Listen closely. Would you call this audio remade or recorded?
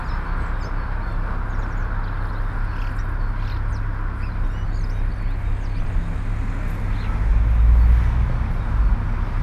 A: recorded